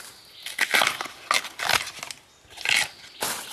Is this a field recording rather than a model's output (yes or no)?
yes